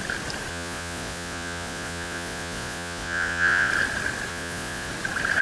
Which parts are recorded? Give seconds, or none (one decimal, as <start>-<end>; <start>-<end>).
0.0-0.5; 3.7-4.3; 4.9-5.4